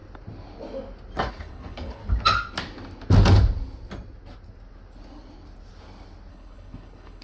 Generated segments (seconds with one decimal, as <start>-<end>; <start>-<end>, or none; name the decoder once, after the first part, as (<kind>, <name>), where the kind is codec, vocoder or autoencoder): 1.3-2.0 (codec, HILCodec); 6.3-7.2